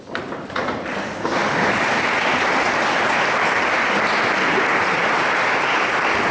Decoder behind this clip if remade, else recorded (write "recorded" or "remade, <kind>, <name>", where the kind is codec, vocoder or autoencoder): recorded